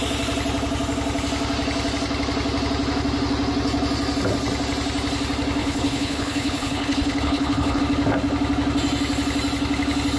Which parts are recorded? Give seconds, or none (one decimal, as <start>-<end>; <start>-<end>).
0.0-5.6; 7.8-10.2